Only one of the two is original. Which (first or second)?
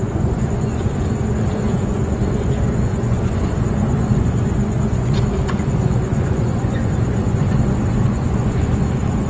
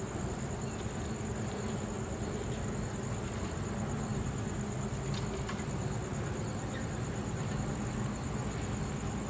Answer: second